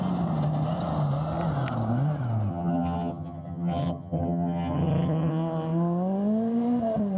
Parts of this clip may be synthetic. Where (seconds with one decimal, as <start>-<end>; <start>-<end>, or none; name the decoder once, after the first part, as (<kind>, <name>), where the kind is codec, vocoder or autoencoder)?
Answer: 2.5-5.3 (vocoder, HiFi-GAN)